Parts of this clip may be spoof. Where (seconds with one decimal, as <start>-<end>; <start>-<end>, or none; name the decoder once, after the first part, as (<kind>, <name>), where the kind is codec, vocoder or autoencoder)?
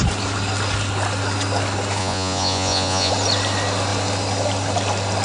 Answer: 2.0-3.1 (vocoder, Vocos)